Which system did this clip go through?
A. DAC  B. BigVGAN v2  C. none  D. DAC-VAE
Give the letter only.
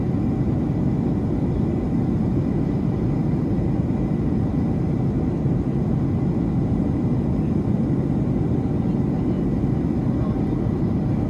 C